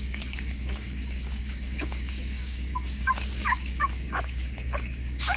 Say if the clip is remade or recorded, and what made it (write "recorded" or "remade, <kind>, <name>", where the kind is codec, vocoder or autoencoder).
remade, codec, DAC